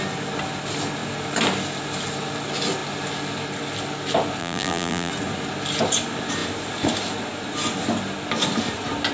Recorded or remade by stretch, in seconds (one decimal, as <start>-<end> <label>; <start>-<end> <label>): 0.0-4.4 recorded; 4.4-5.1 remade; 5.1-9.1 recorded